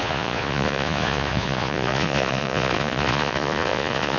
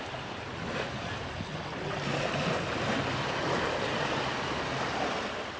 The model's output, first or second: first